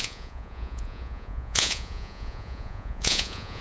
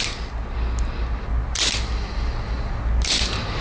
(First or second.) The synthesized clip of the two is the first